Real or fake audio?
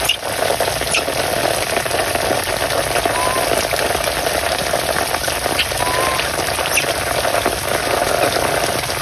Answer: real